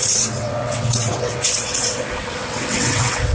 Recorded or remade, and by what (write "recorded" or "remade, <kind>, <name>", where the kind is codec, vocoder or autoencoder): remade, vocoder, WaveNeXt